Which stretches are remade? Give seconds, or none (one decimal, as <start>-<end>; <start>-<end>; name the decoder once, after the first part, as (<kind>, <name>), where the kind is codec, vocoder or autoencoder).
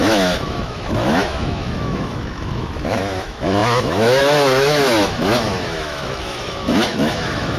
0.0-7.6 (autoencoder, DAC-VAE)